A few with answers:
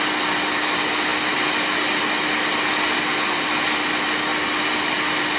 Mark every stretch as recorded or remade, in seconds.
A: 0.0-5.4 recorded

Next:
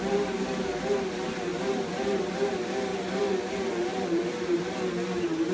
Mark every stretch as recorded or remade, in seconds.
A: 0.0-1.5 recorded; 1.5-2.5 remade; 2.5-2.9 recorded; 2.9-3.5 remade; 3.5-3.9 recorded; 3.9-4.6 remade; 4.6-5.5 recorded

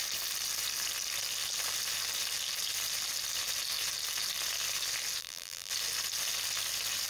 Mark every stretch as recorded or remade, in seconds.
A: 0.0-5.2 recorded; 5.2-5.7 remade; 5.7-7.1 recorded

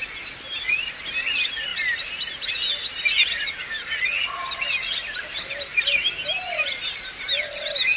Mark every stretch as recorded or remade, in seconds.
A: 0.0-3.6 recorded; 3.6-7.2 remade; 7.2-8.0 recorded

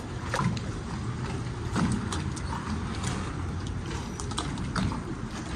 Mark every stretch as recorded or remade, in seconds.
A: 0.0-1.7 recorded; 1.7-3.5 remade; 3.5-4.0 recorded; 4.0-5.6 remade